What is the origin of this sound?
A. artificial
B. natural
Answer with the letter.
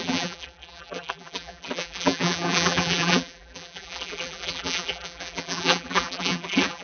A